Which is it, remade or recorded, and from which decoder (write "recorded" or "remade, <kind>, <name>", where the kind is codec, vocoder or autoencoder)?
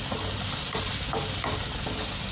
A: recorded